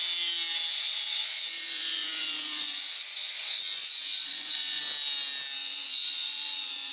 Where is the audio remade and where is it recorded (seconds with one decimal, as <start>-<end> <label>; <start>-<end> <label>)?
0.0-0.7 recorded; 0.7-4.8 remade; 4.8-5.6 recorded; 5.6-6.9 remade